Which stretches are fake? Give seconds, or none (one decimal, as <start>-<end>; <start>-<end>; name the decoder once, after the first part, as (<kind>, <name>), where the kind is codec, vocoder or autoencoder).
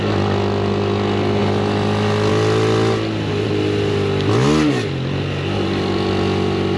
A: none